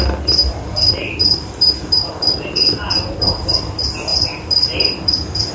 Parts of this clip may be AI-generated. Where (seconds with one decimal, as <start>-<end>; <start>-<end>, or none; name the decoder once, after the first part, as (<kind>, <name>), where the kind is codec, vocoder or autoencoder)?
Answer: none